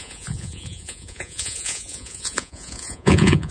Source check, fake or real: fake